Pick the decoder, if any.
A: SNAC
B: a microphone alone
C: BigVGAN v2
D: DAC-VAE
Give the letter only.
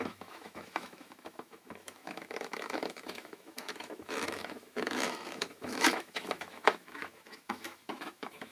D